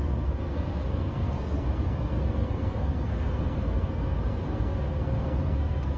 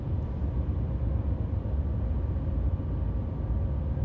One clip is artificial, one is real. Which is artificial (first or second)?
first